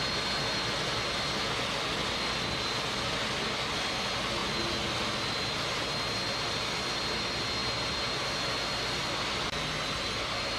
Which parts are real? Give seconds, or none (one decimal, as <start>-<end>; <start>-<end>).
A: 0.0-10.6